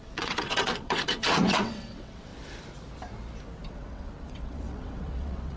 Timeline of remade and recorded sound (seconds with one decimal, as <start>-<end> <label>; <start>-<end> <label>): 0.0-2.3 remade; 2.3-3.7 recorded; 3.7-5.6 remade